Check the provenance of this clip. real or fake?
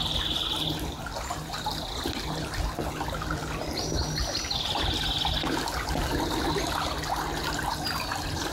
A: real